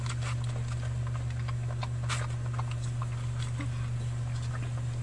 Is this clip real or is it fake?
real